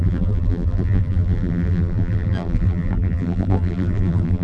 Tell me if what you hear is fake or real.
fake